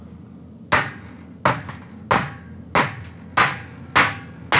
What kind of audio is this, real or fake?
real